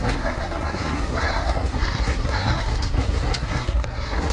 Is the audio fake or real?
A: fake